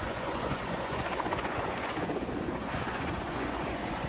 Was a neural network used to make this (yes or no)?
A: yes